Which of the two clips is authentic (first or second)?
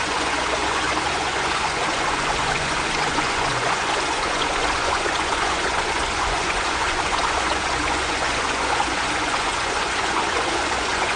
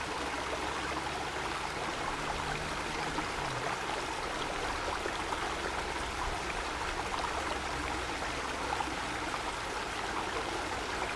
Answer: second